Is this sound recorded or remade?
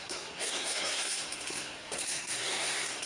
remade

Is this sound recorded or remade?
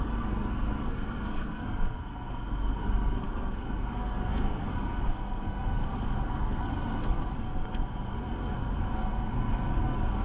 remade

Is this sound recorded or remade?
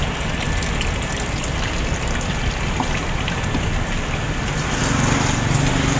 recorded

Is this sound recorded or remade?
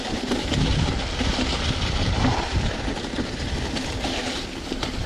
recorded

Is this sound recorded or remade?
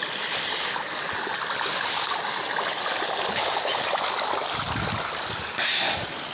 recorded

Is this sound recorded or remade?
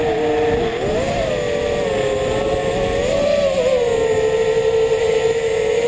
recorded